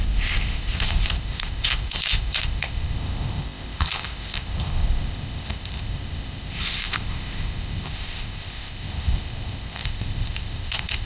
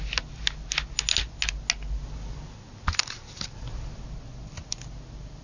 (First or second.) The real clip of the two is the second